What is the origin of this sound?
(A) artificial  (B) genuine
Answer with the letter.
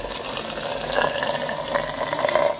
B